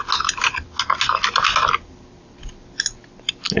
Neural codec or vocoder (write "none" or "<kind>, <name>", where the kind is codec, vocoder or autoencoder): none